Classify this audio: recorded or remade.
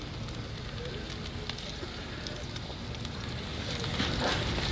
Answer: recorded